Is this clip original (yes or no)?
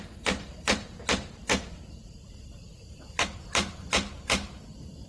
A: no